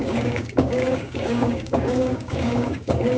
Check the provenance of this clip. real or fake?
fake